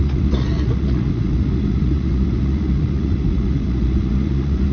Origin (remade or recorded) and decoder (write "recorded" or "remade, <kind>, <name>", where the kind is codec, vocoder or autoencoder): remade, vocoder, Vocos